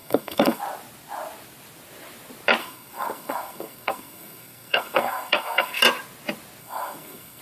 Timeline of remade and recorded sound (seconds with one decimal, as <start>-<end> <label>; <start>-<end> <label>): 0.0-0.6 remade; 0.6-2.6 recorded; 2.6-5.8 remade; 5.8-6.6 recorded; 6.6-7.4 remade